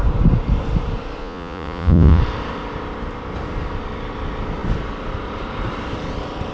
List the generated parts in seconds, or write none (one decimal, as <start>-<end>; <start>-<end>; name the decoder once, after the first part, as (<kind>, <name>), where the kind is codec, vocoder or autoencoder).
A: 1.2-2.2 (vocoder, Vocos)